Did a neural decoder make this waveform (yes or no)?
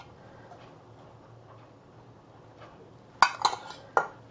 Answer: no